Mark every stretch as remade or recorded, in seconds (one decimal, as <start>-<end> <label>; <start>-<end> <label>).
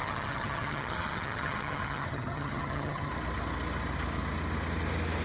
0.0-3.1 remade; 3.1-5.2 recorded